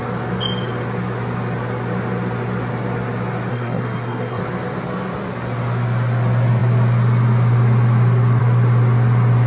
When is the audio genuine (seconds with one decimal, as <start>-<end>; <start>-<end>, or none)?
0.0-3.5; 4.4-9.5

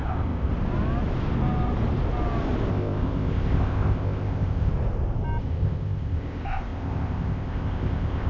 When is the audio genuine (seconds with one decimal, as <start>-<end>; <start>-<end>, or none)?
0.5-2.7; 4.7-5.4